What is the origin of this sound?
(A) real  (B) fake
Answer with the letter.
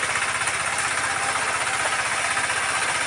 A